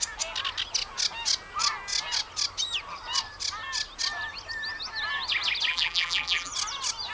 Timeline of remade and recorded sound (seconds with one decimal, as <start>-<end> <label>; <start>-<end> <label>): 0.0-5.7 recorded; 5.7-6.5 remade; 6.5-7.1 recorded